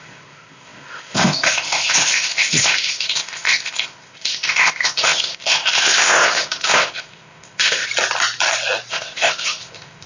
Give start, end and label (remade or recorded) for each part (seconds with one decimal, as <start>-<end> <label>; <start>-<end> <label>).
0.0-7.9 remade; 7.9-8.9 recorded; 8.9-10.1 remade